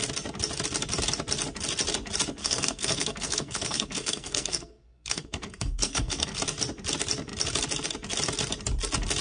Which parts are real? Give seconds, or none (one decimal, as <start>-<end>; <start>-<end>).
0.0-2.4; 6.4-9.2